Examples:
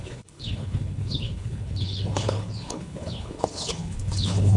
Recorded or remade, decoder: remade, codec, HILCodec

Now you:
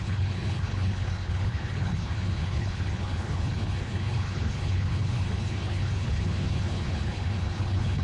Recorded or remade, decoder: remade, codec, HILCodec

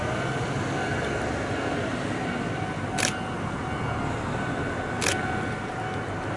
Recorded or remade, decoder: recorded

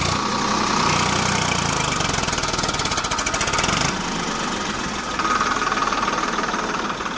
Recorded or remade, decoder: recorded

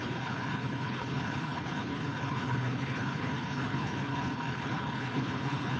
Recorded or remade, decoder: remade, codec, HILCodec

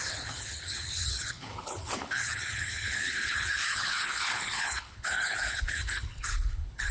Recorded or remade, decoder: remade, codec, HILCodec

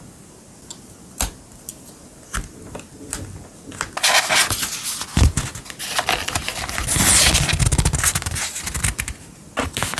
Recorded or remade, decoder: recorded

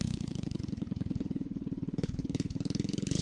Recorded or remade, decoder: remade, codec, HILCodec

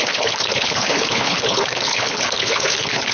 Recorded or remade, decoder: remade, codec, HILCodec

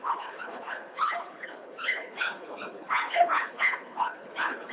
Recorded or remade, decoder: remade, codec, HILCodec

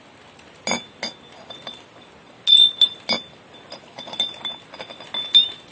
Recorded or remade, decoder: recorded